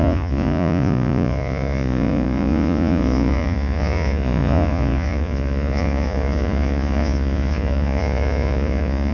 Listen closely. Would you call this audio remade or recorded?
remade